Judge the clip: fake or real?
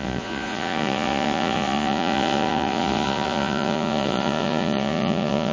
fake